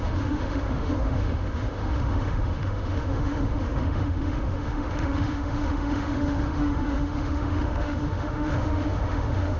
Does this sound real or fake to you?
fake